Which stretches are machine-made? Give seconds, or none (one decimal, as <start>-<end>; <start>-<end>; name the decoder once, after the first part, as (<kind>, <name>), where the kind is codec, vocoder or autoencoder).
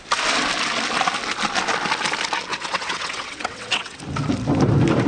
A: 2.5-4.0 (vocoder, WaveNeXt)